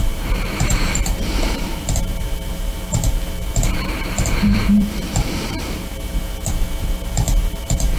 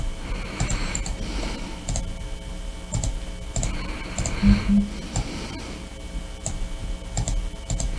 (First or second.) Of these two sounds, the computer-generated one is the first